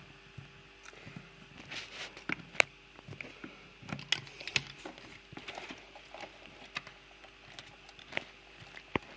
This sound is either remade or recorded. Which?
recorded